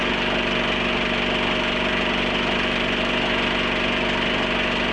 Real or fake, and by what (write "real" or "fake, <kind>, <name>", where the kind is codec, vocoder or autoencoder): real